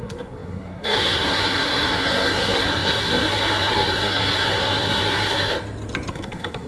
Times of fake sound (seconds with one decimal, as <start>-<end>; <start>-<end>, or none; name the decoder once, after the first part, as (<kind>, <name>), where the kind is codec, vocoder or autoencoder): 0.0-5.5 (codec, SNAC); 6.1-6.7